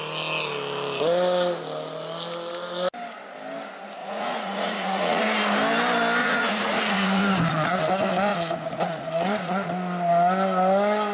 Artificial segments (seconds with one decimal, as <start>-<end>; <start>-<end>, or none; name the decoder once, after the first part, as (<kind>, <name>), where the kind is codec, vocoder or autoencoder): 4.0-5.2 (vocoder, Vocos); 6.2-7.4; 8.3-9.7